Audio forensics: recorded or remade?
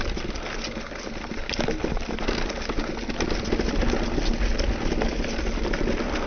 recorded